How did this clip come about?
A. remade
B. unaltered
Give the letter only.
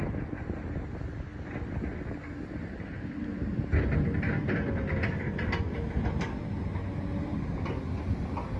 B